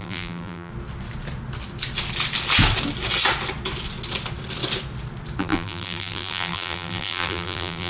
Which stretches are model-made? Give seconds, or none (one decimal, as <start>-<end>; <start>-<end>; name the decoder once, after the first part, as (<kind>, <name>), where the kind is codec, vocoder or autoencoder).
0.0-0.7 (vocoder, BigVGAN v2); 5.4-7.9